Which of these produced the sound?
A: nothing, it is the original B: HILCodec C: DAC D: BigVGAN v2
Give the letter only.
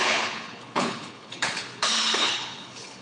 B